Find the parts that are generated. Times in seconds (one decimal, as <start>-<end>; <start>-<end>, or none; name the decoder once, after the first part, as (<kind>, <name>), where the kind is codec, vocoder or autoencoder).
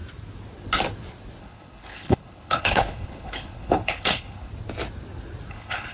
1.4-4.5 (codec, HILCodec); 5.5-5.9